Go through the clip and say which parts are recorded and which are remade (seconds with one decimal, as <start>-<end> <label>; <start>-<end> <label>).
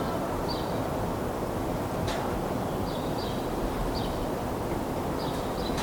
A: 0.0-3.8 recorded; 3.8-4.5 remade; 4.5-5.8 recorded